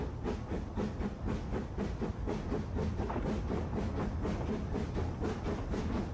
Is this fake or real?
real